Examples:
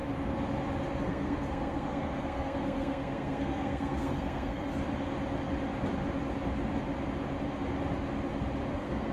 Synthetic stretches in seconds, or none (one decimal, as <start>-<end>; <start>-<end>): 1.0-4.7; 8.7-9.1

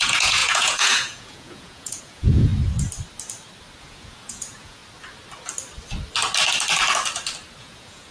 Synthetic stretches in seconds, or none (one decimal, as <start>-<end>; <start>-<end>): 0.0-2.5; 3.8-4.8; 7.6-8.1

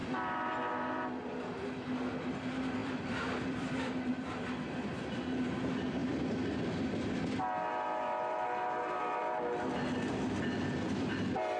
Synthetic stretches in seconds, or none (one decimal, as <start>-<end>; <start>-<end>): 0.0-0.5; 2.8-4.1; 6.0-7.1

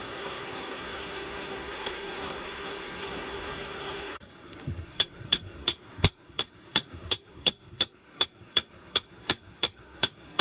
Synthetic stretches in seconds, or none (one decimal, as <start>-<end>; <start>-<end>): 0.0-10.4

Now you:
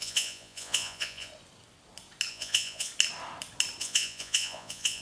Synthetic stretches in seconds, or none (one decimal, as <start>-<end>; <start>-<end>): 0.0-1.3; 2.3-2.9; 3.8-5.0

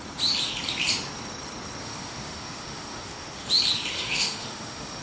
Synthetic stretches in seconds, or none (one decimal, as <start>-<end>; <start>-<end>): 1.8-3.5; 3.9-5.0

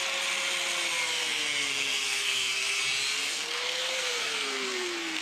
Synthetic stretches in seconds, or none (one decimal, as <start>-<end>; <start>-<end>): 1.2-2.8; 3.2-5.2

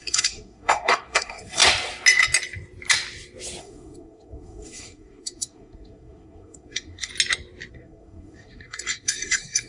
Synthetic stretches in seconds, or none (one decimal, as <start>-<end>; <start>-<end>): 0.0-1.6; 3.6-7.1; 7.7-9.7